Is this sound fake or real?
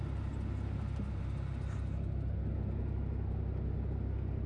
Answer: real